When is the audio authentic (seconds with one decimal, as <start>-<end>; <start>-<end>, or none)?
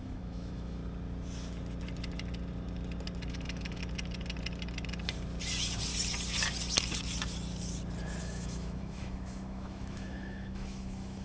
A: 0.8-3.3; 3.8-8.2